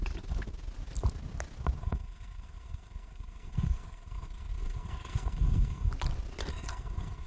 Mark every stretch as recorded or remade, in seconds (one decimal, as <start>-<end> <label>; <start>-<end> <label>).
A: 0.0-1.8 recorded; 1.8-5.9 remade; 5.9-6.5 recorded; 6.5-7.3 remade